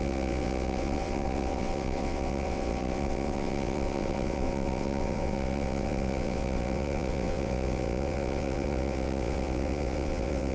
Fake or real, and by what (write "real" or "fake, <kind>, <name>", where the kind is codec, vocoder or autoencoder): fake, vocoder, WaveNeXt